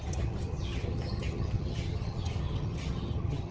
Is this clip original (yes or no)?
no